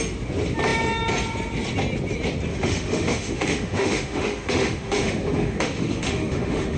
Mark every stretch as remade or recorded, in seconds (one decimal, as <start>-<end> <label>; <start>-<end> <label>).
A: 0.0-2.5 recorded; 2.5-6.8 remade

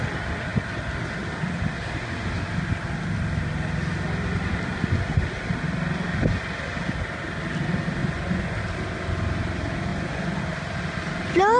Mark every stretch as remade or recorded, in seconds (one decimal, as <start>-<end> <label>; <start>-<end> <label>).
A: 0.0-8.0 recorded; 8.0-8.6 remade; 8.6-9.9 recorded; 9.9-10.4 remade; 10.4-11.6 recorded

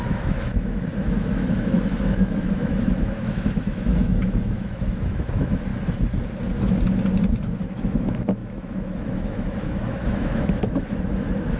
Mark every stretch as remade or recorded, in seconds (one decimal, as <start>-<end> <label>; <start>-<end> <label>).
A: 0.0-5.7 remade; 5.7-7.7 recorded; 7.7-11.6 remade

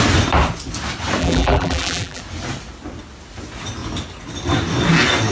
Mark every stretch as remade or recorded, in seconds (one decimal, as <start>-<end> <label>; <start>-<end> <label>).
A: 0.0-1.2 recorded; 1.2-2.2 remade; 2.2-5.3 recorded